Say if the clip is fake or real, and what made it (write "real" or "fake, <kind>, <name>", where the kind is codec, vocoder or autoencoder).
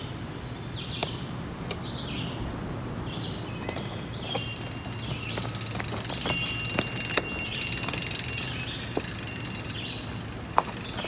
real